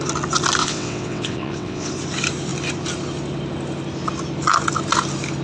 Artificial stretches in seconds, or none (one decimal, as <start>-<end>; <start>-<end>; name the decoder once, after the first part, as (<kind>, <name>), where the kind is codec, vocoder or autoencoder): 0.6-1.9 (vocoder, WaveNeXt)